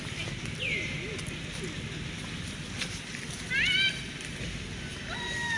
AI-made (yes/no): no